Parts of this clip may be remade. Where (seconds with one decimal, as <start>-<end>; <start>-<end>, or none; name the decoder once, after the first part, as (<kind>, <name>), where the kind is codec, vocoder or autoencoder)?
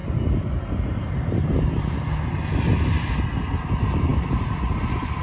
none